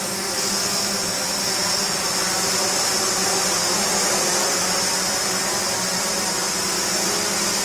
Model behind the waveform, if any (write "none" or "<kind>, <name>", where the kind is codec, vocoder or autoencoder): none